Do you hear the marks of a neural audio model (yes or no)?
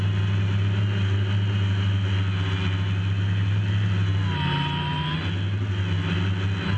no